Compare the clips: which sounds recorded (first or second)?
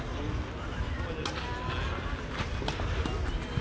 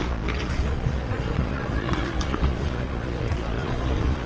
first